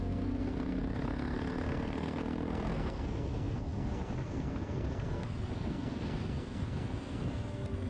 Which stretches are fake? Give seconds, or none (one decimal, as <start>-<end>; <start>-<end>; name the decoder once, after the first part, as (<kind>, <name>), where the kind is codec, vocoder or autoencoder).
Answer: 0.0-7.9 (codec, SNAC)